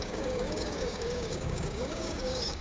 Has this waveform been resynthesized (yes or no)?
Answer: yes